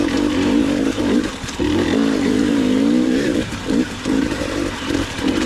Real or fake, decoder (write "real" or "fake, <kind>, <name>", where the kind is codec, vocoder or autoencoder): fake, vocoder, BigVGAN v2